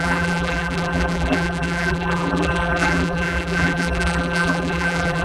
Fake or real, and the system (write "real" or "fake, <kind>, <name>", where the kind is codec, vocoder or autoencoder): fake, vocoder, BigVGAN v2